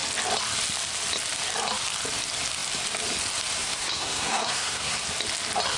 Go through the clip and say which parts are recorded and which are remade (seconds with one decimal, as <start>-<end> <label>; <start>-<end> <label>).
0.0-3.6 recorded; 3.6-5.0 remade; 5.0-5.8 recorded